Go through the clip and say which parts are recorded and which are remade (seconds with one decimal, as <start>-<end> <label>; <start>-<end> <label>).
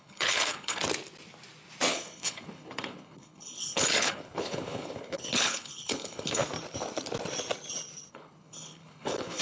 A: 0.0-0.8 remade; 0.8-1.9 recorded; 1.9-6.4 remade; 6.4-8.1 recorded; 8.1-9.4 remade